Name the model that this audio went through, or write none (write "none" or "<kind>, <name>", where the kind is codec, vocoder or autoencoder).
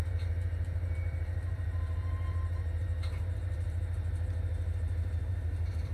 vocoder, BigVGAN v2